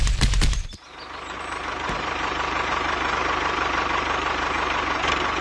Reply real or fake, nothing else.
fake